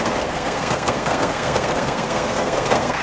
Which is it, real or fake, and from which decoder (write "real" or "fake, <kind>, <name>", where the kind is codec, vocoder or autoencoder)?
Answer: fake, codec, SNAC